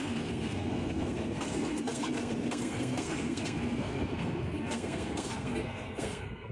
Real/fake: fake